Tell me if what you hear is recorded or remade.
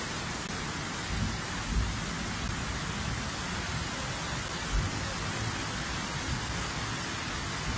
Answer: recorded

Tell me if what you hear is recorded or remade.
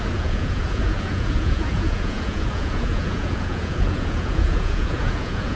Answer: remade